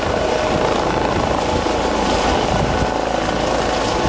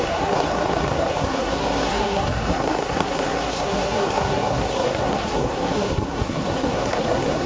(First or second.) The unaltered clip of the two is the first